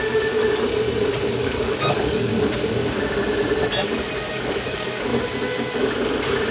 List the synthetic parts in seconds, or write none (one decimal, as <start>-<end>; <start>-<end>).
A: 0.0-0.4; 1.3-2.3; 4.3-5.1